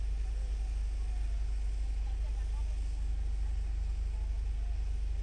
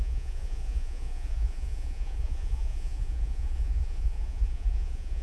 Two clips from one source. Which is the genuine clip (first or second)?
first